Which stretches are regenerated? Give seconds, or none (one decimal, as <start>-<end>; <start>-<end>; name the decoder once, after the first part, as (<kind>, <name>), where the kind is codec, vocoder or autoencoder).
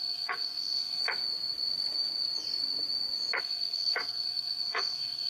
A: 0.0-1.0 (codec, SNAC); 3.4-5.3